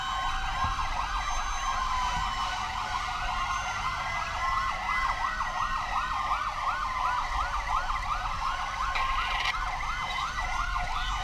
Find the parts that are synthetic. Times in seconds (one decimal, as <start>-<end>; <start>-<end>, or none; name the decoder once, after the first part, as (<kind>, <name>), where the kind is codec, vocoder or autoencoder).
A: none